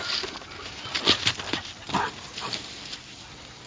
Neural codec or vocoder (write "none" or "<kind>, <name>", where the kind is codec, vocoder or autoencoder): none